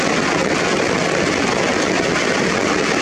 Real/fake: real